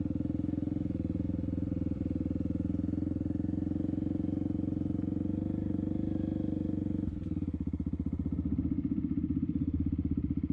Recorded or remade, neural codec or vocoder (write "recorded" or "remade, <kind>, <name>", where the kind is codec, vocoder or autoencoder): recorded